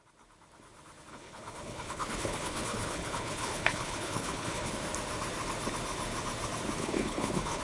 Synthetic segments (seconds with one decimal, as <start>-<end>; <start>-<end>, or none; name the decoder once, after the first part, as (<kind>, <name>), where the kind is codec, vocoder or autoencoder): 1.1-4.7 (codec, HILCodec); 6.8-7.6